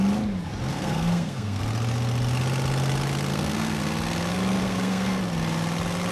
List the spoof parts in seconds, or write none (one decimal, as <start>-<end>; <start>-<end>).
0.7-1.6; 3.3-3.8; 4.6-5.2